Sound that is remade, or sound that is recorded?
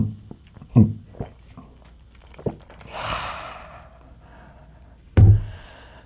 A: recorded